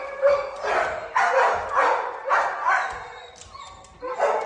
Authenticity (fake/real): real